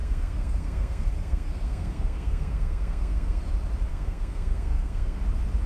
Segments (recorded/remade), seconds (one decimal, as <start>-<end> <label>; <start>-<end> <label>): 0.0-3.4 remade; 3.4-3.9 recorded; 3.9-5.2 remade; 5.2-5.7 recorded